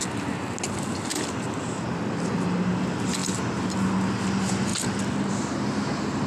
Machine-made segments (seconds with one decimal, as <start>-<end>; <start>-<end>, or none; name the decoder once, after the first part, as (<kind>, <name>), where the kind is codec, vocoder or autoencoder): none